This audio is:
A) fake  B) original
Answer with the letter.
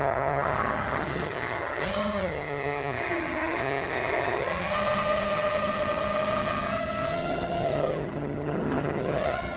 A